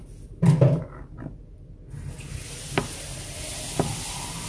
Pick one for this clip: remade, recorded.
recorded